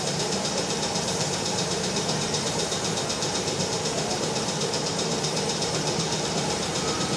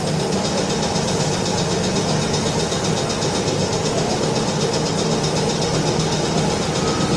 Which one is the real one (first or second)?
second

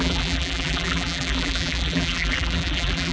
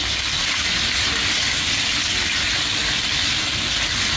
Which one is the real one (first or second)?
second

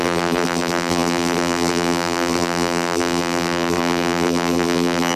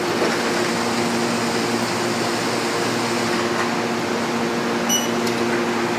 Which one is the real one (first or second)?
second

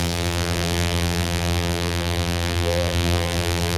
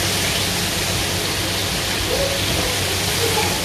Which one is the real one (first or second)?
second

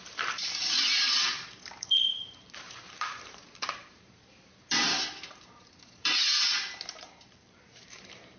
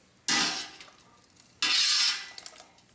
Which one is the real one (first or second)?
second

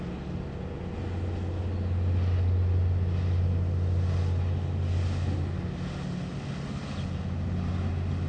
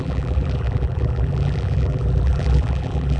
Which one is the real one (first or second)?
first